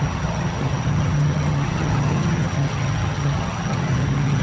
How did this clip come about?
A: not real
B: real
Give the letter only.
A